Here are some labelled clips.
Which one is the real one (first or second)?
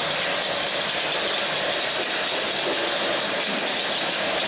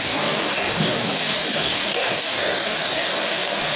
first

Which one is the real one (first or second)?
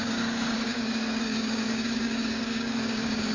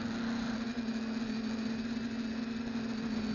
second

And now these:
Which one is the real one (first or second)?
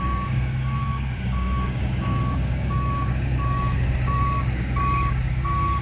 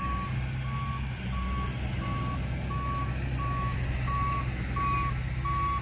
second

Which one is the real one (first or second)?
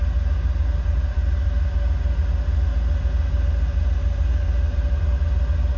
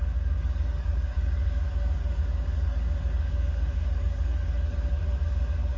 first